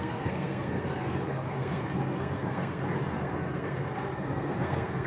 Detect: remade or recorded remade